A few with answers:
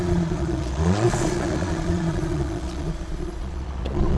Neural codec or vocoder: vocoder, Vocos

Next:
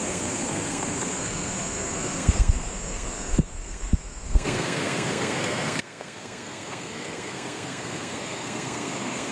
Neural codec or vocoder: codec, SNAC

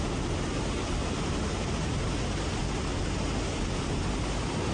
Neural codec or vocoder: none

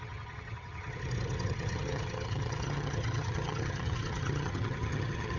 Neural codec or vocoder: vocoder, HiFi-GAN